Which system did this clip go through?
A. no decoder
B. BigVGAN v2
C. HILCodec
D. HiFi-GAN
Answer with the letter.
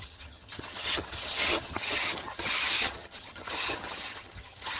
D